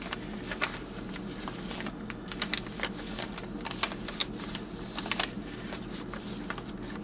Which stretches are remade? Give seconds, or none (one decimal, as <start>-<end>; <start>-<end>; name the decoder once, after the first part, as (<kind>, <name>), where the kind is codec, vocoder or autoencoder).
none